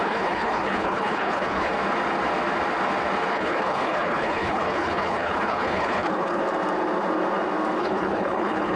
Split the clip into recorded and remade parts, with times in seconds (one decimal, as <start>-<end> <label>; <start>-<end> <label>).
0.0-1.7 remade; 1.7-3.3 recorded; 3.3-6.4 remade; 6.4-7.8 recorded; 7.8-8.8 remade